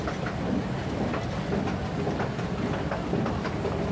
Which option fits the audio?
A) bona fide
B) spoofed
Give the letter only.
A